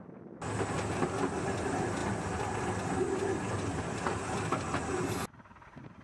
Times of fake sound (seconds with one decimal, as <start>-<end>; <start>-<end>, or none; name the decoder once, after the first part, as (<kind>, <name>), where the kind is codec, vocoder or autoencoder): none